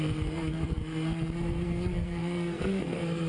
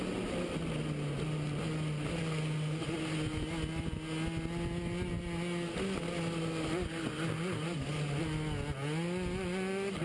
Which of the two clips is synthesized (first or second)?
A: first